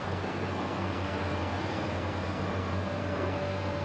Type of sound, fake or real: fake